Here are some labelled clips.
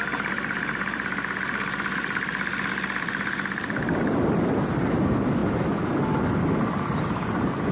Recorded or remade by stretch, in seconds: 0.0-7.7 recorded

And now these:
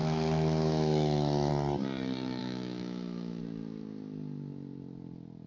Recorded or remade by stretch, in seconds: 0.0-1.5 remade; 1.5-2.4 recorded; 2.4-3.4 remade; 3.4-5.5 recorded

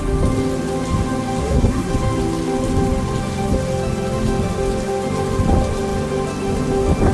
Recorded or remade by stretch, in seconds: 0.0-1.4 recorded; 1.4-1.9 remade; 1.9-7.1 recorded

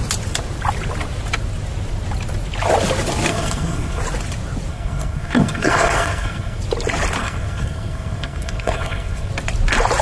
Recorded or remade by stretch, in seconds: 0.0-3.3 recorded; 3.3-4.0 remade; 4.0-4.7 recorded; 4.7-6.6 remade; 6.6-7.2 recorded; 7.2-9.3 remade; 9.3-10.0 recorded

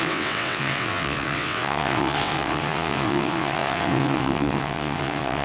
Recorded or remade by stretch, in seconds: 0.0-5.4 remade

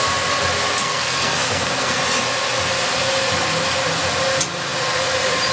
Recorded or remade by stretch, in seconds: 0.0-0.8 recorded; 0.8-2.0 remade; 2.0-5.5 recorded

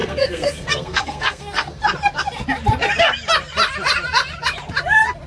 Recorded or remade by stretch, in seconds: 0.0-1.8 remade; 1.8-5.3 recorded

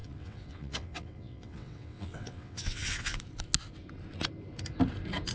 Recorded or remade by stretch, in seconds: 0.0-3.2 remade; 3.2-5.3 recorded